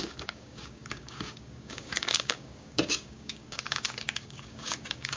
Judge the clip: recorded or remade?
remade